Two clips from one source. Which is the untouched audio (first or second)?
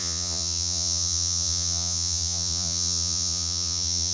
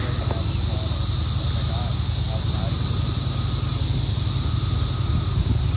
second